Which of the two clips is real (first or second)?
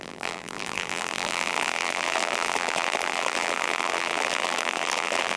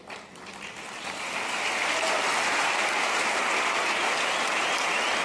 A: second